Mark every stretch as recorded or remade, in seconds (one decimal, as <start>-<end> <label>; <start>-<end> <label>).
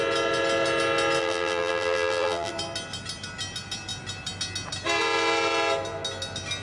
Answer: 0.0-1.2 recorded; 1.2-2.5 remade; 2.5-6.6 recorded